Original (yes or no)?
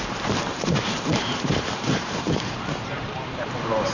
no